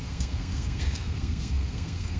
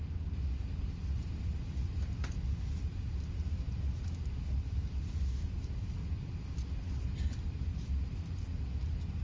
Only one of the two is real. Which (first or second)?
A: second